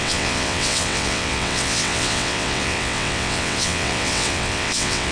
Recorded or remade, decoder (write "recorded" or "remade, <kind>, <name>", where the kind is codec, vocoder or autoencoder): remade, vocoder, WaveNeXt